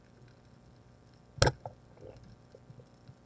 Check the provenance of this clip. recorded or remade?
recorded